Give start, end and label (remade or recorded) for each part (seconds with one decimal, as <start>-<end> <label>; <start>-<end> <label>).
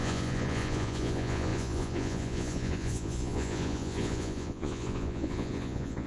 0.0-6.1 remade